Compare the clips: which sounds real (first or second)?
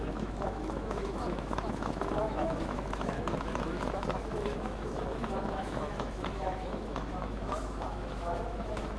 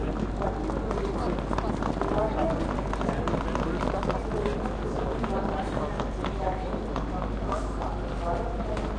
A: second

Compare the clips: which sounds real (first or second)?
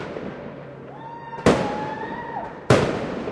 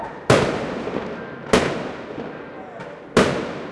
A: second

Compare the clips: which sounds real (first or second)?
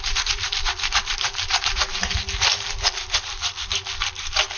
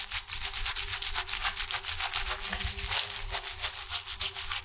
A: second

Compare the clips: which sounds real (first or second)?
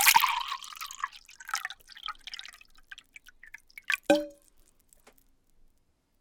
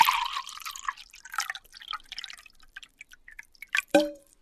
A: first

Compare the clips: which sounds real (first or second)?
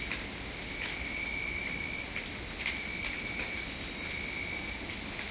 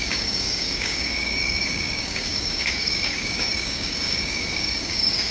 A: first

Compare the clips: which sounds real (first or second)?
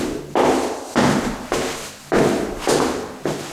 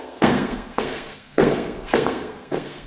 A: first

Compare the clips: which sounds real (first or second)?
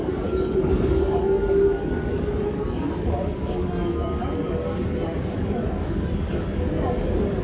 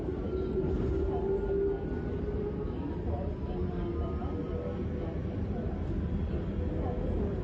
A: second